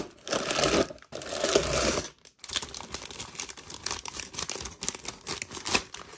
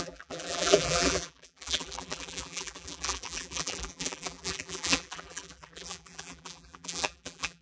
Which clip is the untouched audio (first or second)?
first